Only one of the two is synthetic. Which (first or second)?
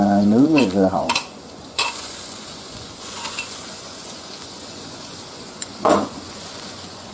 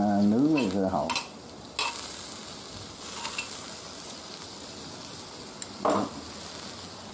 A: first